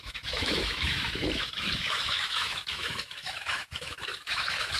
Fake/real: fake